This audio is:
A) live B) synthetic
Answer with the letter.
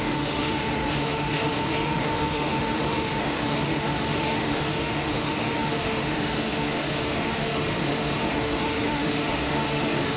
B